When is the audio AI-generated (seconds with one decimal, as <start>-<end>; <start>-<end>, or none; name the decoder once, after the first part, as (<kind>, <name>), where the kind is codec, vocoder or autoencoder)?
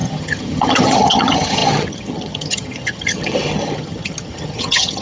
0.0-5.0 (vocoder, HiFi-GAN)